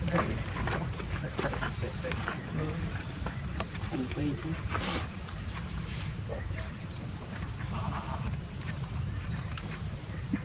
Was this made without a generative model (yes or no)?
no